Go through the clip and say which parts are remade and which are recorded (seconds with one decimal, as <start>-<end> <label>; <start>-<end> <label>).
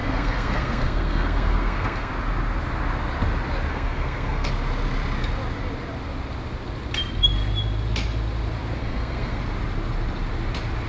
0.0-2.1 remade; 2.1-3.7 recorded; 3.7-4.5 remade; 4.5-8.8 recorded; 8.8-9.4 remade; 9.4-10.9 recorded